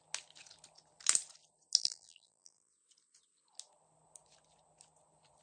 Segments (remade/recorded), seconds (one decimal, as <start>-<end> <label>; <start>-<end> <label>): 0.0-1.8 recorded; 1.8-2.7 remade; 2.7-5.4 recorded

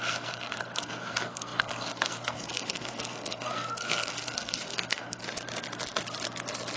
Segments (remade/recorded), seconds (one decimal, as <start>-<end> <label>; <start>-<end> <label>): 0.0-5.2 remade; 5.2-6.8 recorded